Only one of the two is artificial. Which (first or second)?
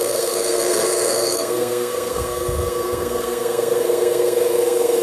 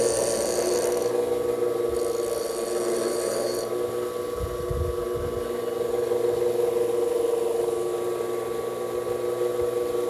first